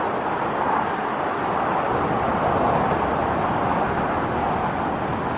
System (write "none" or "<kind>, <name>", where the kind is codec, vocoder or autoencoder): none